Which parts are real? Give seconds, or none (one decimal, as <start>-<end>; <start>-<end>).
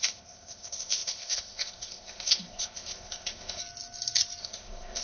3.6-4.4